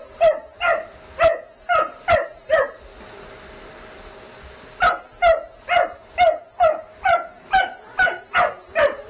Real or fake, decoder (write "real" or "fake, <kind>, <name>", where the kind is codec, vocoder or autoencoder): real